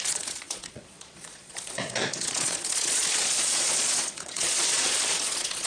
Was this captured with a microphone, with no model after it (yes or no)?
no